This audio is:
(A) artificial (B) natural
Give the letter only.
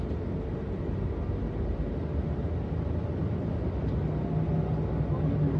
B